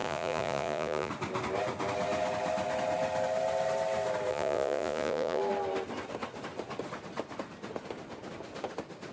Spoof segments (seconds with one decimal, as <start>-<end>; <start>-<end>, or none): 0.0-1.1; 4.3-5.4